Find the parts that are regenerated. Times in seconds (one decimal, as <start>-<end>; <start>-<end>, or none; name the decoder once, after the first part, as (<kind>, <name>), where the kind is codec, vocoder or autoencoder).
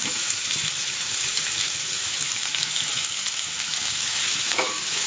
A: 0.0-5.1 (autoencoder, DAC-VAE)